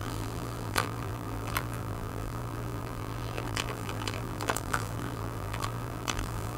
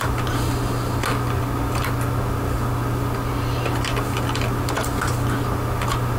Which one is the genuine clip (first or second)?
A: second